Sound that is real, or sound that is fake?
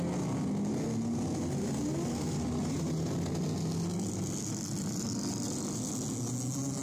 real